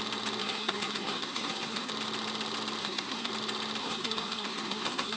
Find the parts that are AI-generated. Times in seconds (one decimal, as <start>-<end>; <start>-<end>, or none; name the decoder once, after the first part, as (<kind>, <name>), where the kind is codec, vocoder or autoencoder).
0.4-1.9 (codec, SNAC); 2.8-3.3; 3.8-5.2